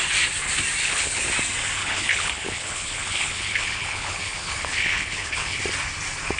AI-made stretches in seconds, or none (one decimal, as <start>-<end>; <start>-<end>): 0.8-1.3; 1.8-5.6